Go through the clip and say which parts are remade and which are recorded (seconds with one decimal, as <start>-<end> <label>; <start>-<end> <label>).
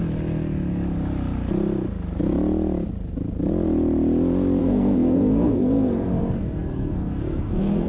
0.0-4.6 recorded; 4.6-7.9 remade